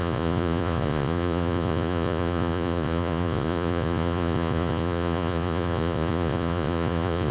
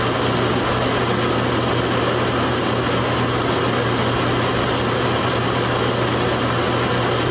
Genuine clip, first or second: second